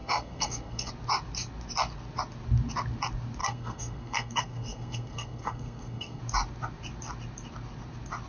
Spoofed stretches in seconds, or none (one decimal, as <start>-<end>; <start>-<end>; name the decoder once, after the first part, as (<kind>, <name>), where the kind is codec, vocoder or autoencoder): 0.0-0.9 (codec, SNAC); 3.4-6.2